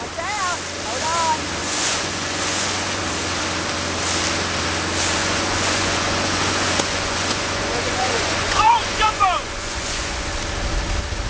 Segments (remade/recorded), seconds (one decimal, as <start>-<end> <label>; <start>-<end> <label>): 0.0-1.6 recorded; 1.6-3.0 remade; 3.0-5.2 recorded; 5.2-10.4 remade; 10.4-11.3 recorded